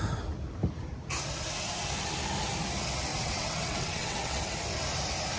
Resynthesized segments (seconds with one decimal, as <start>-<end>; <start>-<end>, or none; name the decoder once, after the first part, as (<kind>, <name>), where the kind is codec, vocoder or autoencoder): 3.1-4.4 (vocoder, WaveNeXt)

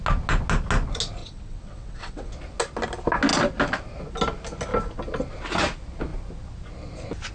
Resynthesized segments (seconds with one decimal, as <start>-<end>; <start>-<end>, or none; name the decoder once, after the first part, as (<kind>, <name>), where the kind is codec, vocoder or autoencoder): 1.2-2.3 (vocoder, WaveNeXt)